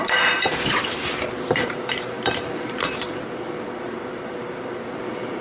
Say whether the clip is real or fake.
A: fake